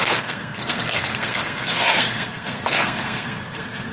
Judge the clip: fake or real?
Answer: fake